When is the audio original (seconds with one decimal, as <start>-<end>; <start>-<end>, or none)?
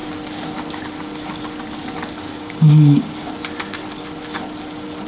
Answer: 0.0-2.4; 3.3-5.1